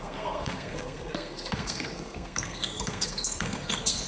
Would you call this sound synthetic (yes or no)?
yes